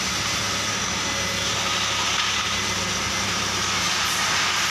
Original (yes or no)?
yes